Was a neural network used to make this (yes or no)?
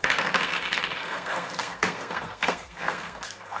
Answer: yes